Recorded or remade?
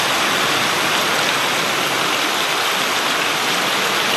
recorded